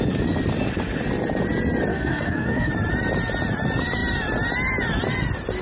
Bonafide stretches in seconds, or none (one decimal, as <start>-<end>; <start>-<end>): 0.0-1.9; 2.7-5.6